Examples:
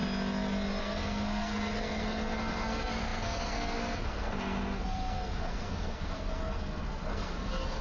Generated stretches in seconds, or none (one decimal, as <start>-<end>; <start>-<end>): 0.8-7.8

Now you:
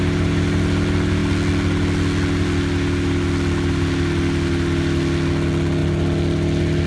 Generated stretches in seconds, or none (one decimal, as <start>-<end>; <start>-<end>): none

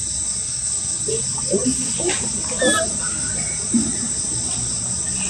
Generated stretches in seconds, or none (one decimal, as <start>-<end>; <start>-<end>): 0.4-1.0

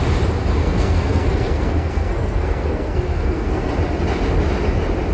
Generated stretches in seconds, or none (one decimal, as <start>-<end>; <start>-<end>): 0.6-3.7

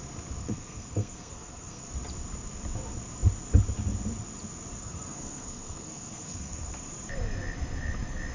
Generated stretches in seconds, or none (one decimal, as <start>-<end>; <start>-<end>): 0.4-1.9; 4.8-6.7

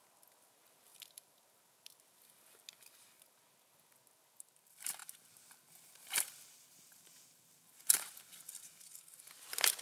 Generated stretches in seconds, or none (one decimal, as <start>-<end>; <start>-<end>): none